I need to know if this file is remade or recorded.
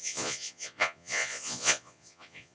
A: remade